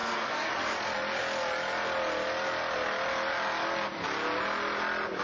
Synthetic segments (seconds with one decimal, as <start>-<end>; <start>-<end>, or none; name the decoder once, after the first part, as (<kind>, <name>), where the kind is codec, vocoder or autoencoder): 0.0-0.5 (codec, SNAC)